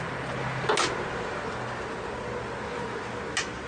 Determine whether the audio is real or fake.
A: real